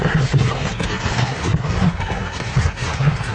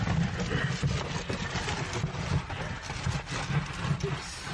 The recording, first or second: second